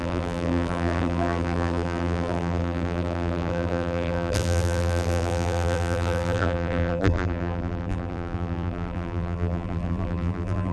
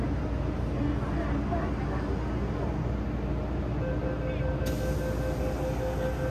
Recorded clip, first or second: second